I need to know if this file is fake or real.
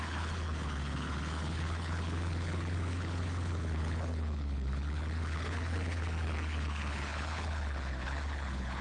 fake